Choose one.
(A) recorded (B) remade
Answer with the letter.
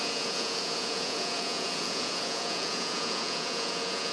B